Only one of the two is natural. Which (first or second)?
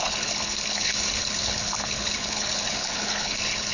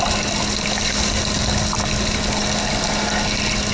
second